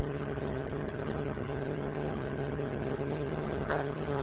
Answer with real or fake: fake